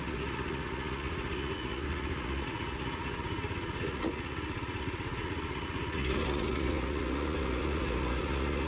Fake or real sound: fake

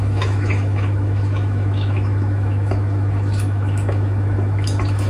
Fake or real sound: fake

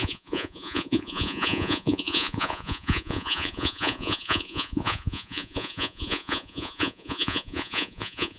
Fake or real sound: fake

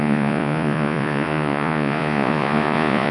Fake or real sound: fake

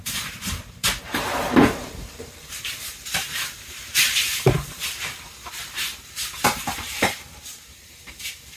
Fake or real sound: fake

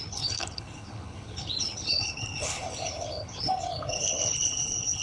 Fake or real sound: fake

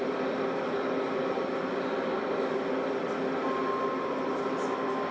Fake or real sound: real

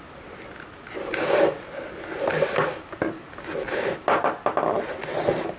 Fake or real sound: real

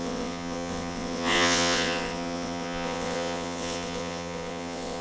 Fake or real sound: fake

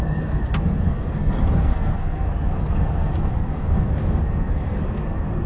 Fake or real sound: fake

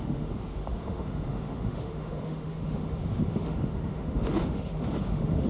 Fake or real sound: fake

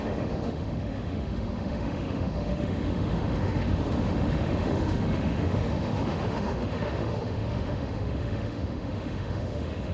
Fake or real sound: fake